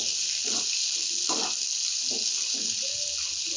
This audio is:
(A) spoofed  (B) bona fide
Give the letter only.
B